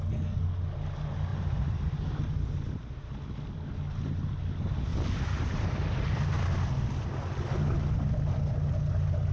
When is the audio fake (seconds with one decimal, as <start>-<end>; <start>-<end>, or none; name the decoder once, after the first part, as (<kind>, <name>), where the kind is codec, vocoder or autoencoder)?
1.3-2.2 (vocoder, BigVGAN v2); 4.9-6.3